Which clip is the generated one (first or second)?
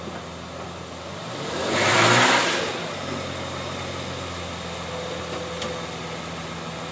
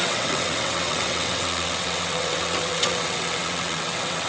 second